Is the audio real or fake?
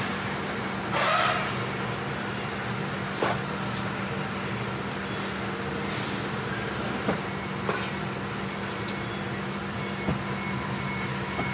real